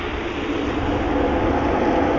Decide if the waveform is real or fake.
real